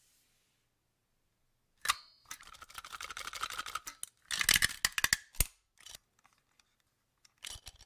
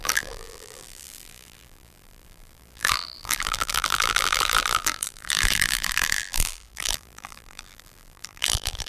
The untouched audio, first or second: first